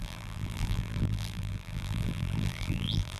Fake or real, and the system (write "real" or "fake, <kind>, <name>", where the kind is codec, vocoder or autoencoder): fake, vocoder, BigVGAN v2